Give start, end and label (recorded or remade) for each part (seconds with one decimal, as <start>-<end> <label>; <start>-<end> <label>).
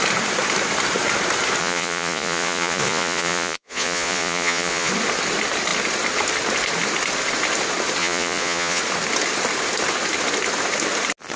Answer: 0.0-1.6 recorded; 1.6-4.9 remade; 4.9-8.0 recorded; 8.0-8.8 remade; 8.8-11.4 recorded